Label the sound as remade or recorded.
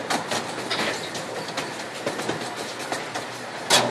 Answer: recorded